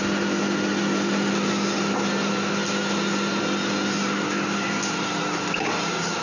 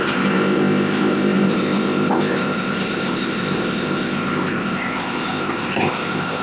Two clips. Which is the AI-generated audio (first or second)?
second